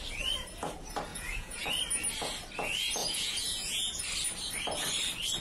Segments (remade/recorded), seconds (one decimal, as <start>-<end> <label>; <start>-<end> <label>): 0.0-1.1 recorded; 1.1-1.7 remade; 1.7-3.0 recorded; 3.0-4.0 remade; 4.0-5.4 recorded